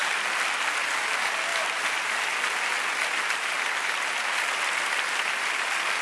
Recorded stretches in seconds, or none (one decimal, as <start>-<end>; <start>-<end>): 0.0-6.0